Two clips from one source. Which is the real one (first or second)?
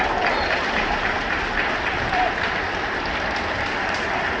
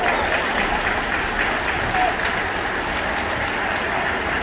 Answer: second